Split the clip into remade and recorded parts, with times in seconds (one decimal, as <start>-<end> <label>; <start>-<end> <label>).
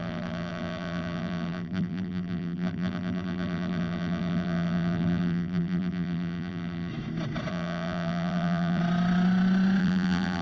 0.0-6.9 remade; 6.9-7.5 recorded; 7.5-8.8 remade; 8.8-9.8 recorded; 9.8-10.4 remade